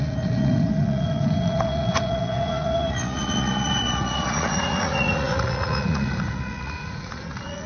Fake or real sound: fake